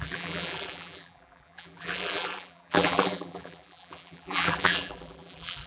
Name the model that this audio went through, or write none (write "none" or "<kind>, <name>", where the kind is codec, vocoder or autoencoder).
vocoder, BigVGAN v2